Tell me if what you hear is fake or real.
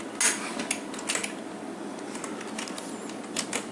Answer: real